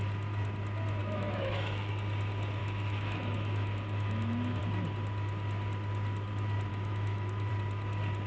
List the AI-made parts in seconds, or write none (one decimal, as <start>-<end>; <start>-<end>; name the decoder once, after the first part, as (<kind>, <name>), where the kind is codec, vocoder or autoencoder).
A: 1.0-1.9 (autoencoder, DAC-VAE); 2.6-4.6; 6.7-7.5